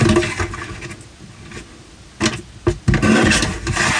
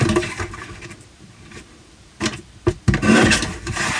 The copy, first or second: second